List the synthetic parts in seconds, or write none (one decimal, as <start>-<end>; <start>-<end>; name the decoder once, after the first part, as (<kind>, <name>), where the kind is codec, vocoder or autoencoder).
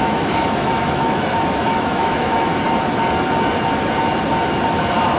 0.0-2.5 (autoencoder, DAC-VAE)